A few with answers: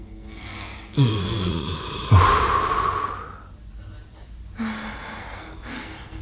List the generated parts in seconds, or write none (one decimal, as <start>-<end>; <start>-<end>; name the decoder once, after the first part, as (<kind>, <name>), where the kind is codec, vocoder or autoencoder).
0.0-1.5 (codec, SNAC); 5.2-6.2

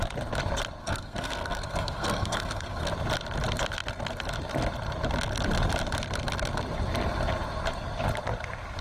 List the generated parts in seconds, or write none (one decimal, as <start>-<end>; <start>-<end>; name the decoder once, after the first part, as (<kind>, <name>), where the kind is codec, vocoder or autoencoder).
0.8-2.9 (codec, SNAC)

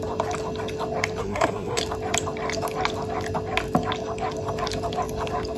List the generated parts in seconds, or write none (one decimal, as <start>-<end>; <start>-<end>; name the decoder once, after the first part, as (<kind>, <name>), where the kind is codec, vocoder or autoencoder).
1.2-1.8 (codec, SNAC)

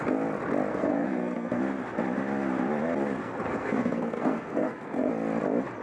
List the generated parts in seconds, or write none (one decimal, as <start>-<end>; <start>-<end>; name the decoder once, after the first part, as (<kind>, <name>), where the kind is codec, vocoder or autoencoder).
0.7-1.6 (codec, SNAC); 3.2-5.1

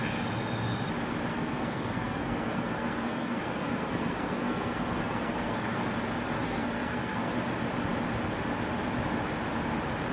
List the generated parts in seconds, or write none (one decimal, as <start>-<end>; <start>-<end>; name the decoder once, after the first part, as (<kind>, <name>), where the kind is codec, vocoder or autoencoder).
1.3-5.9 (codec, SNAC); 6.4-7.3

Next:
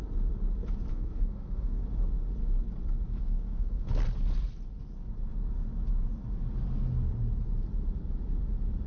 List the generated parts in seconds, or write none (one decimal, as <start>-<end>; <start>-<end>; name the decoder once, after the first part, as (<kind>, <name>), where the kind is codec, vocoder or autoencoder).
0.9-1.8 (codec, SNAC); 3.1-3.9

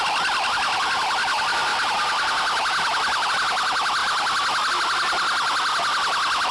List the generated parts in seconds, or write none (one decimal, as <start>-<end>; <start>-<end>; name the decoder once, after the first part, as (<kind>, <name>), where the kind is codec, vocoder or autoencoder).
none

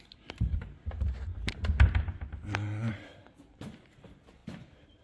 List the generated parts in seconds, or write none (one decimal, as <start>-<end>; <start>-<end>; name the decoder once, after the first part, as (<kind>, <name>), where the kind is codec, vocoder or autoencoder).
none